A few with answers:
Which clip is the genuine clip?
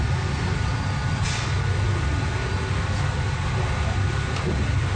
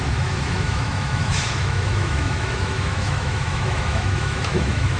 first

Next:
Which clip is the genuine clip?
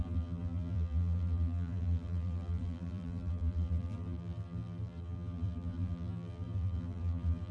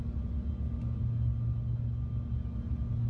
second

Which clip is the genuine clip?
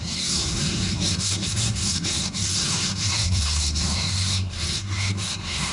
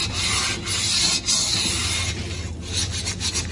second